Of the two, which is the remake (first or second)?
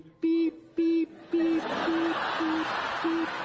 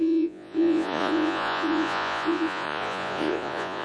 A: second